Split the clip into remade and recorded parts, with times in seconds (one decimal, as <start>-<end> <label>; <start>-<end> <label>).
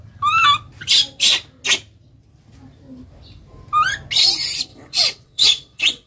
0.0-4.7 recorded; 4.7-6.1 remade